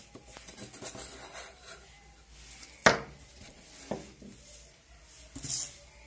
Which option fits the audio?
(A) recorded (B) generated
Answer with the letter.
A